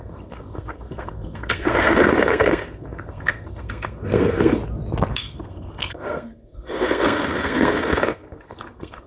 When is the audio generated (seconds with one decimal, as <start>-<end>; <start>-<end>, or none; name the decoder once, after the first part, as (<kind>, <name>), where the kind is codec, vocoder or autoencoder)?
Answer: 0.0-4.6 (codec, SNAC); 5.1-9.1